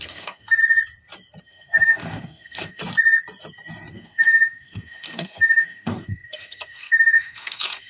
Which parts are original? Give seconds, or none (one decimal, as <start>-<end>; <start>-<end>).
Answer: 0.6-1.4; 2.8-3.9